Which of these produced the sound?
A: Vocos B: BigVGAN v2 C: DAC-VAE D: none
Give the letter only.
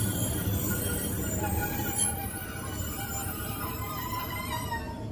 B